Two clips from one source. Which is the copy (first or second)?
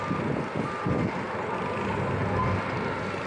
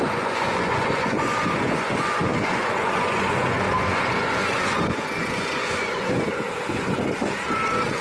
second